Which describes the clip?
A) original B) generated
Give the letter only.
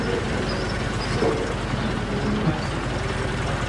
A